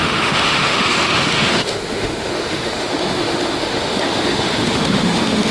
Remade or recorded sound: remade